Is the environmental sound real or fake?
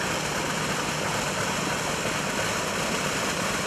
real